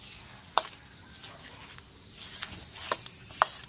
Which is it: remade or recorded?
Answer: recorded